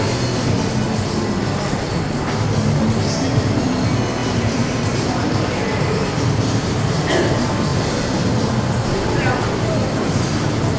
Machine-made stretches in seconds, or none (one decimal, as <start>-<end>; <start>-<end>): 4.2-7.0; 7.7-8.5; 9.8-10.3